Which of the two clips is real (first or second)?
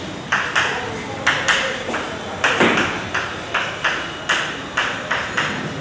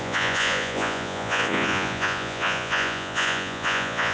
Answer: first